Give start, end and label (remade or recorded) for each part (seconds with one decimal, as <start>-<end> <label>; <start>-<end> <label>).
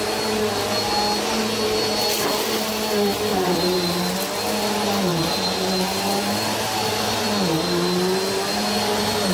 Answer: 0.0-3.3 recorded; 3.3-4.0 remade; 4.0-5.1 recorded; 5.1-7.0 remade; 7.0-9.3 recorded